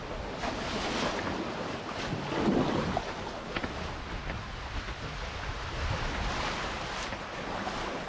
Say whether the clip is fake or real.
real